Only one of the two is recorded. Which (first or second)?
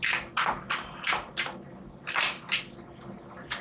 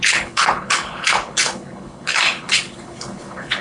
first